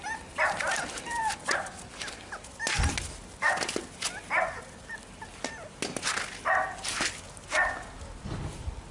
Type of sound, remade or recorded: recorded